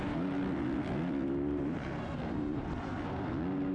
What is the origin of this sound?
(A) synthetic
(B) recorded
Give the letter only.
B